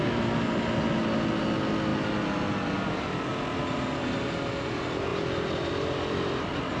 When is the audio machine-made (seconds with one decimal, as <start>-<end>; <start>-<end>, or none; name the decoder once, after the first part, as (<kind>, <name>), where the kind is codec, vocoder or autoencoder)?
none